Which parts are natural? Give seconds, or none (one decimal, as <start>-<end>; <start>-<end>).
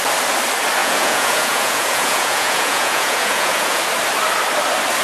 0.0-0.8; 3.8-5.0